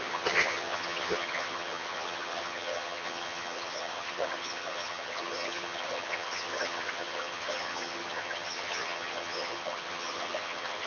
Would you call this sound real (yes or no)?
no